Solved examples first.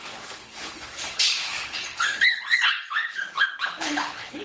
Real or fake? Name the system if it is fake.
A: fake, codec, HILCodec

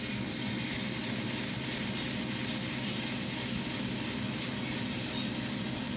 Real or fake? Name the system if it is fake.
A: real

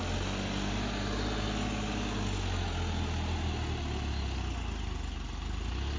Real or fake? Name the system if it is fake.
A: real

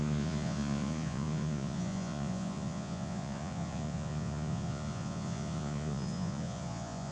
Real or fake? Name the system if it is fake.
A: fake, vocoder, Vocos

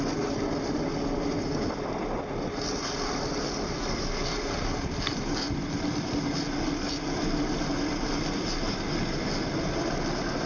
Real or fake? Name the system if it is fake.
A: real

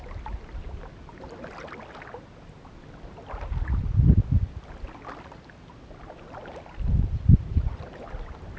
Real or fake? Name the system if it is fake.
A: real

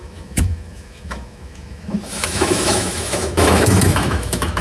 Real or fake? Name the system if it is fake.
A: fake, autoencoder, DAC-VAE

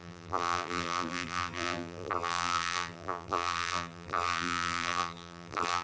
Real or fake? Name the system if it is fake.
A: fake, vocoder, BigVGAN v2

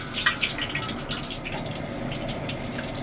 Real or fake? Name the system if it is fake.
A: real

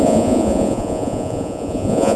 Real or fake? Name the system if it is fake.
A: fake, vocoder, Vocos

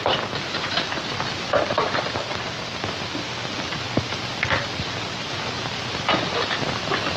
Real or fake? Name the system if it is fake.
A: real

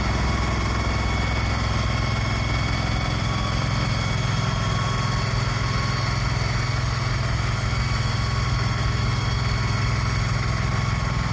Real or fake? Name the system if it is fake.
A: real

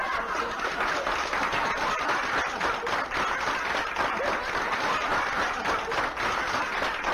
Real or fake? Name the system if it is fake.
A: real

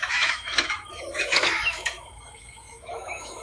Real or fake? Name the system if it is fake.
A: fake, autoencoder, DAC-VAE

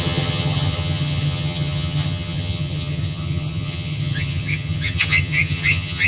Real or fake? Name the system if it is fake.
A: fake, vocoder, HiFi-GAN